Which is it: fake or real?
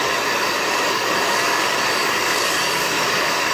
fake